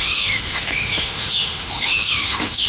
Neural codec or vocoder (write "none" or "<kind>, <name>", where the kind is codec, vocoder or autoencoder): autoencoder, DAC-VAE